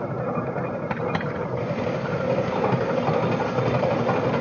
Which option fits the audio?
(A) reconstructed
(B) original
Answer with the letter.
B